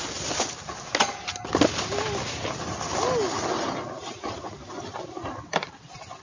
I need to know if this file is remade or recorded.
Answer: recorded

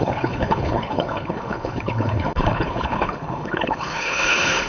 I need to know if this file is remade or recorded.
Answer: remade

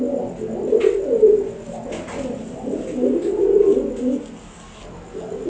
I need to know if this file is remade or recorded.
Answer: recorded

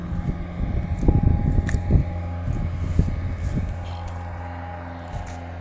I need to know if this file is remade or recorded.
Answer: recorded